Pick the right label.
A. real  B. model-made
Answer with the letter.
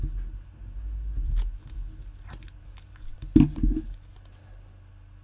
A